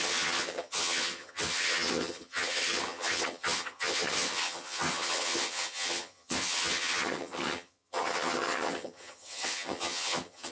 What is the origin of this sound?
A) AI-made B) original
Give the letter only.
A